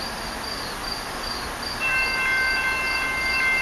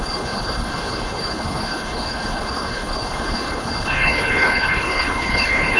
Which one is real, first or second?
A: first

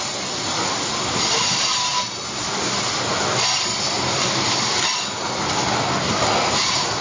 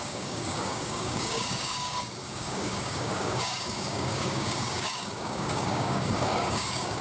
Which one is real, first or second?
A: first